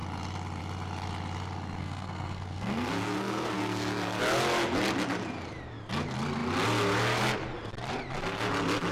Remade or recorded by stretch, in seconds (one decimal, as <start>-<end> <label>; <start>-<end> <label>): 0.0-1.8 recorded; 1.8-4.2 remade; 4.2-8.9 recorded